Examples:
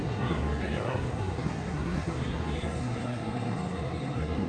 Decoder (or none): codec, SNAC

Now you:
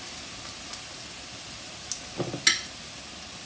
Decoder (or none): none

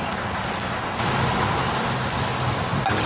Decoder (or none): none